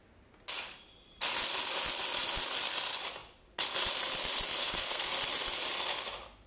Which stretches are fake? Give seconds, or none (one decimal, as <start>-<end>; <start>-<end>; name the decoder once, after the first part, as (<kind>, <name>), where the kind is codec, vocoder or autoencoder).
4.6-5.1 (codec, SNAC)